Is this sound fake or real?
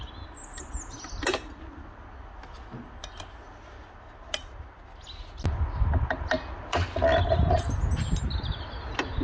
real